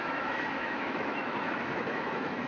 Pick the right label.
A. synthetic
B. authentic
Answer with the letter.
A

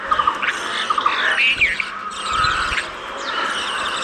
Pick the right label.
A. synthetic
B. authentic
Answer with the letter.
B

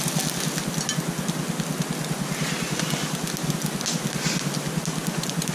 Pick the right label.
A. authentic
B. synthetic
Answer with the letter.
A